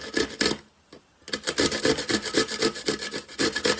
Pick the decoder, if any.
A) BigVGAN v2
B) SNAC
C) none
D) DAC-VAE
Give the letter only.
C